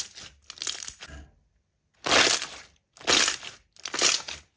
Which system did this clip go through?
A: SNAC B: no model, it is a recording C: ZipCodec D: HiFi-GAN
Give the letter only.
B